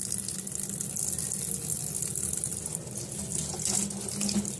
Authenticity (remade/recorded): recorded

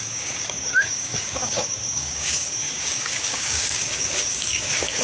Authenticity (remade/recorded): remade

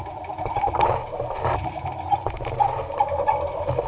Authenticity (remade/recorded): recorded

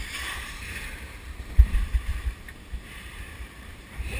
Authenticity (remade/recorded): remade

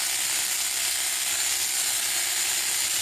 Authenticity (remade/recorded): recorded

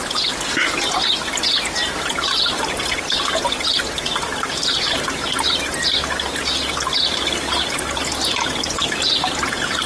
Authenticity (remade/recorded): recorded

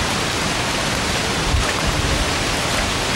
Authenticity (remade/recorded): recorded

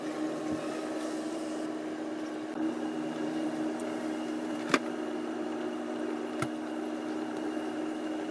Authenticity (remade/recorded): remade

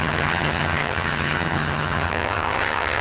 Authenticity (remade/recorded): remade